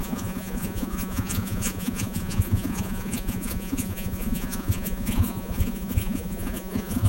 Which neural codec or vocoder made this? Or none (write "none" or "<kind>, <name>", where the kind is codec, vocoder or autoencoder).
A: vocoder, Vocos